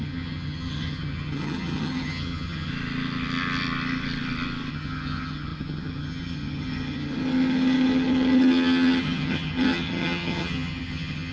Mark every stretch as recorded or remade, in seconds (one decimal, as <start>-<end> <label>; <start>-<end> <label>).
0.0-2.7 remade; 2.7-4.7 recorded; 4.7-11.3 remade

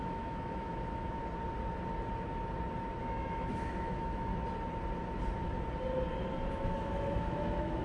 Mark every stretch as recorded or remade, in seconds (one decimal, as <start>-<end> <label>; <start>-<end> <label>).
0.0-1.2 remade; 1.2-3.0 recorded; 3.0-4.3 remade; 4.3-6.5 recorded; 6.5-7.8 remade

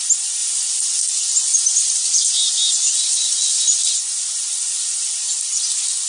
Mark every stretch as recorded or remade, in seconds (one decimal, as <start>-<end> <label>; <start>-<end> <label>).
0.0-6.1 recorded

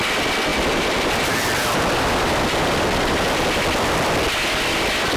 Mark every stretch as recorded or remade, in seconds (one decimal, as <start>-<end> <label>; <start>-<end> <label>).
0.0-0.5 recorded; 0.5-3.4 remade; 3.4-5.2 recorded

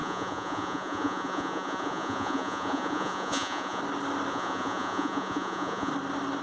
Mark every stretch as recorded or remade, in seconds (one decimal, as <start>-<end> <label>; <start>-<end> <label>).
0.0-3.8 remade; 3.8-4.3 recorded; 4.3-5.9 remade; 5.9-6.4 recorded

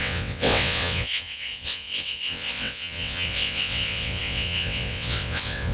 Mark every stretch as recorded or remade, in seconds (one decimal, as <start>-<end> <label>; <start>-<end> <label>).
0.0-5.7 remade

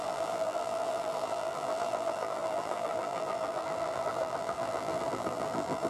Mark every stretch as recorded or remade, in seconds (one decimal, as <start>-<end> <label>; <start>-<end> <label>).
0.0-5.9 remade

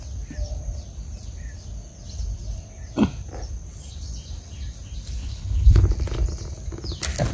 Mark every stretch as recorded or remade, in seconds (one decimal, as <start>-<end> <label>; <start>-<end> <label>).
0.0-5.2 recorded; 5.2-5.8 remade; 5.8-7.3 recorded